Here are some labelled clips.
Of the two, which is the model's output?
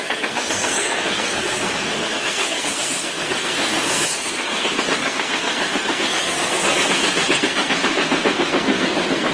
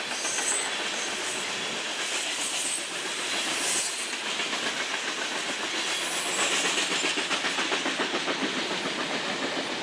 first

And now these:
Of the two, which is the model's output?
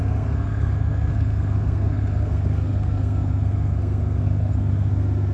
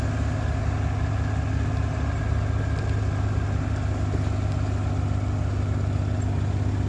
first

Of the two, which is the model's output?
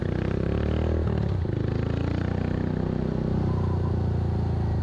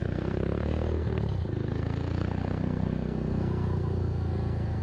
second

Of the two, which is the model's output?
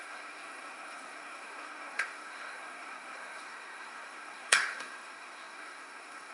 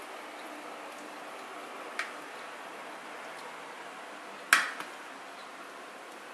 first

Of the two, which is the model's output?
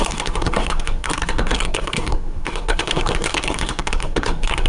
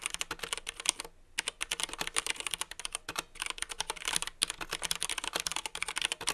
first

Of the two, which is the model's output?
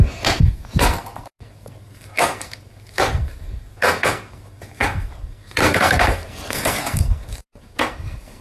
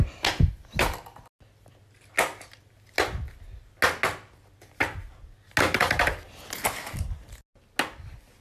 first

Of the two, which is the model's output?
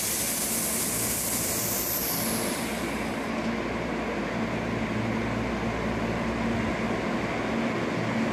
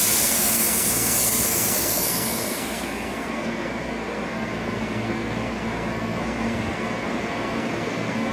second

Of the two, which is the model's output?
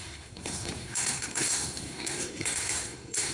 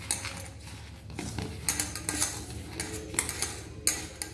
first